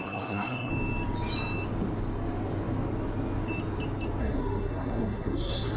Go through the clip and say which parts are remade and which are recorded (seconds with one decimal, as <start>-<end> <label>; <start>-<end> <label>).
0.0-0.7 remade; 0.7-4.2 recorded; 4.2-5.8 remade